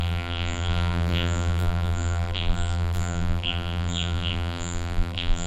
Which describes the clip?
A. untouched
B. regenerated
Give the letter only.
B